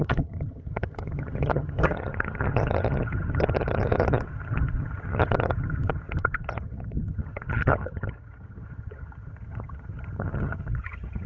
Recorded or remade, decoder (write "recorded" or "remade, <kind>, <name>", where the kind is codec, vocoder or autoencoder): remade, vocoder, HiFi-GAN